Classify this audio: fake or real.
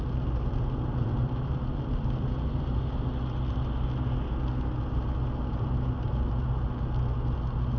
real